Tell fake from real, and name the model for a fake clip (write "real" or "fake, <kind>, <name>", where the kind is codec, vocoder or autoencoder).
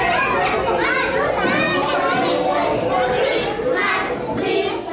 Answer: real